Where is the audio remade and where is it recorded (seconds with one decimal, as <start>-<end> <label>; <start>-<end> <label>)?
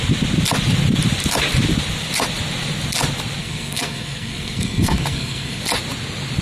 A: 0.0-3.4 recorded; 3.4-5.6 remade; 5.6-6.4 recorded